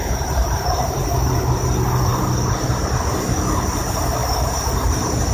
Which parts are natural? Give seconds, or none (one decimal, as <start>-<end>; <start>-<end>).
1.2-4.2